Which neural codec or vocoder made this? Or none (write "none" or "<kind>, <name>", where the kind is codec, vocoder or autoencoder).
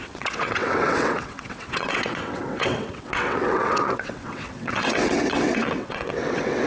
vocoder, WaveNeXt